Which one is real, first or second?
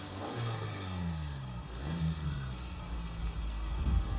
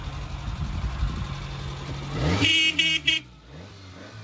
second